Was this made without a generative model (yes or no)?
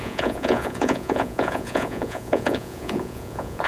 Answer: no